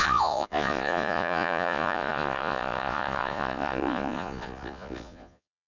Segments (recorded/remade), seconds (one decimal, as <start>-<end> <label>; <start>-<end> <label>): 0.0-5.7 remade